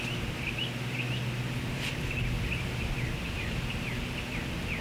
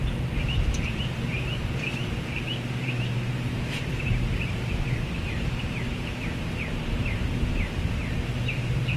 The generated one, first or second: second